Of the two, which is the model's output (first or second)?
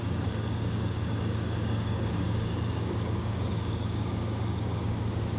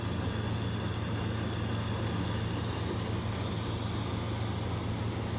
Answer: first